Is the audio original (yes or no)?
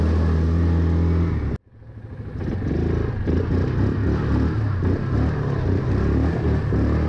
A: yes